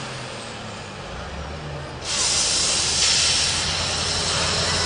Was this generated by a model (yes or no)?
no